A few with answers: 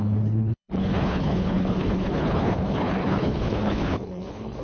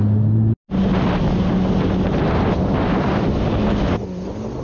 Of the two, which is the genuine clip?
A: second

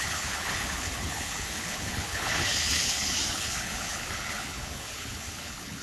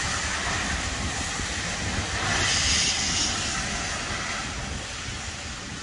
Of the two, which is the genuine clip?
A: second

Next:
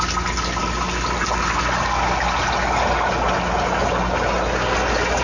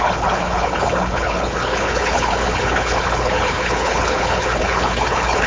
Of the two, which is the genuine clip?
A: first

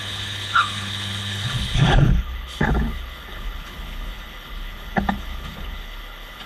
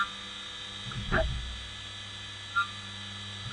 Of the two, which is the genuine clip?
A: second